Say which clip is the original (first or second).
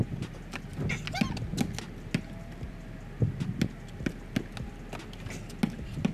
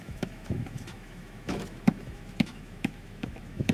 first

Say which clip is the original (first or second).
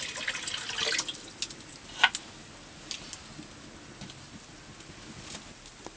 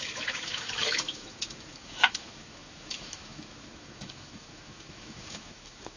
first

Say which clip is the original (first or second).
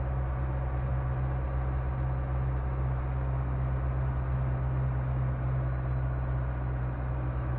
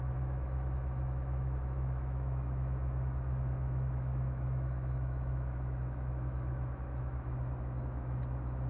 first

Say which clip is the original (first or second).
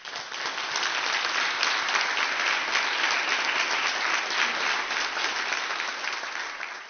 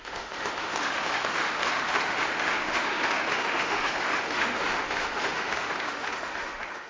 first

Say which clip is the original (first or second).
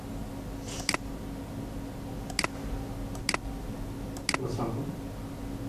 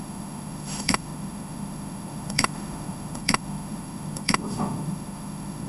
first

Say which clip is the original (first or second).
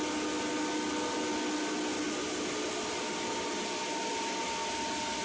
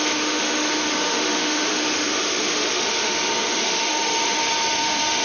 first